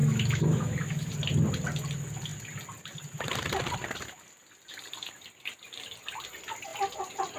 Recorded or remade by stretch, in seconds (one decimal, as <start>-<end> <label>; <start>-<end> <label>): 0.0-1.1 remade; 1.1-7.4 recorded